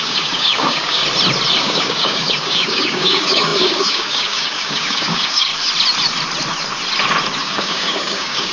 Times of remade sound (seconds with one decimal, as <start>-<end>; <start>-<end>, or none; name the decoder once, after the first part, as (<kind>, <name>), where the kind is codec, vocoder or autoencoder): 0.0-1.0 (codec, DAC); 1.6-5.5; 7.4-8.5